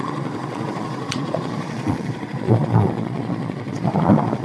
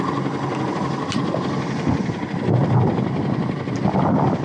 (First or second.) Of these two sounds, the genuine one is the second